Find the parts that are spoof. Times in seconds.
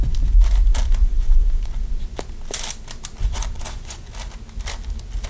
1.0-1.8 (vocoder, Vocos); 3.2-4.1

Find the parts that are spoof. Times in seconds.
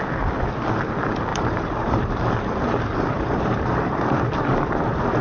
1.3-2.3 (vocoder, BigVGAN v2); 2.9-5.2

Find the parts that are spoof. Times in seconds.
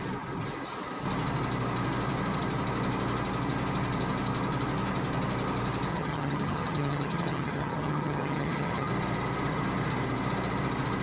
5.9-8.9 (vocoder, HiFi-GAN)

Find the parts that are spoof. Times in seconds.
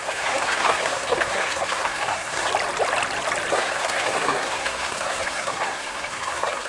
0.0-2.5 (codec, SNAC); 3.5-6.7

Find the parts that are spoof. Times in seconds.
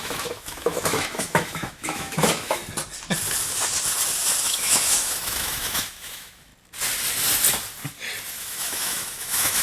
0.0-2.6 (autoencoder, DAC-VAE); 4.4-6.5; 8.4-9.6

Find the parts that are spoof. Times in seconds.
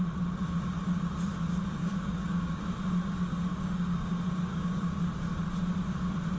1.8-2.6 (codec, DAC); 3.5-4.1; 4.5-5.0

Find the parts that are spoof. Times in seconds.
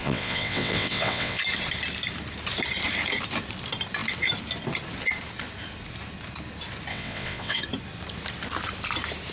0.0-1.4 (vocoder, WaveNeXt); 6.9-7.6